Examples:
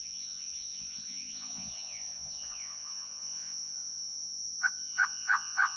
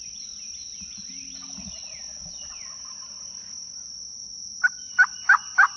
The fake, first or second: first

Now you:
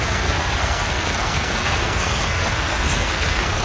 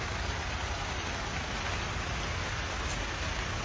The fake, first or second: first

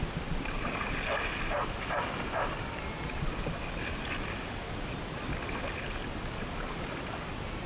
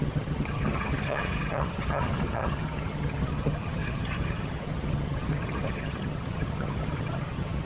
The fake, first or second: second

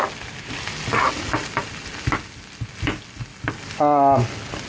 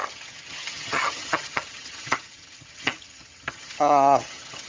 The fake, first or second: second